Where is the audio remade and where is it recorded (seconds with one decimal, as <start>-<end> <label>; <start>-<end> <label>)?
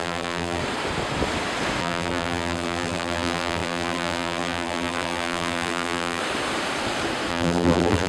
0.0-0.6 remade; 0.6-1.8 recorded; 1.8-6.2 remade; 6.2-7.3 recorded; 7.3-8.1 remade